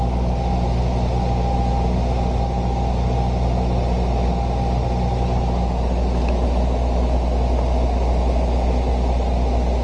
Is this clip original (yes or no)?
yes